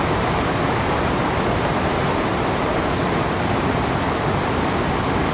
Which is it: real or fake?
real